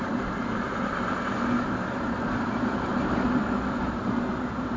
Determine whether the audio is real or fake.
fake